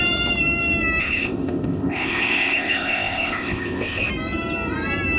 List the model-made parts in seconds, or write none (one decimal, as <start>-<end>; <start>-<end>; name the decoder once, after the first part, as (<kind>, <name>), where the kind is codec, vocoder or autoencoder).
1.0-4.1 (codec, ZipCodec)

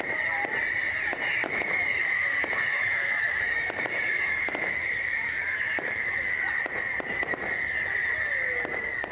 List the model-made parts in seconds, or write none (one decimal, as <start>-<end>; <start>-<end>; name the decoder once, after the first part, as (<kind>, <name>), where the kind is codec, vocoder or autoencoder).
1.4-6.4 (autoencoder, DAC-VAE)

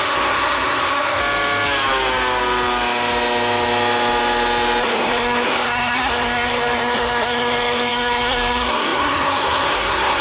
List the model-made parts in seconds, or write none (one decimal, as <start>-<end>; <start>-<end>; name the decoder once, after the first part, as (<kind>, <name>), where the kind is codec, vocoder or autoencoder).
0.0-1.2 (codec, SNAC); 4.8-10.2

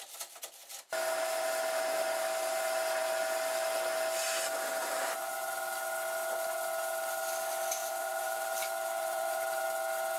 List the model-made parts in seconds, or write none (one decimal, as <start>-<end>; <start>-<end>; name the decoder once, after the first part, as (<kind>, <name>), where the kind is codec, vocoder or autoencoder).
4.8-5.5 (vocoder, BigVGAN v2); 7.8-9.6